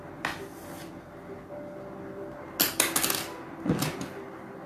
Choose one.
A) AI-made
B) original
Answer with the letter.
B